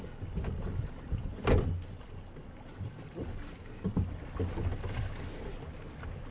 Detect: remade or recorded recorded